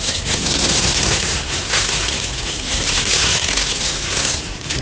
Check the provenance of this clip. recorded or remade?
remade